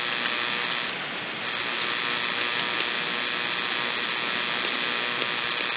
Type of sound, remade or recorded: recorded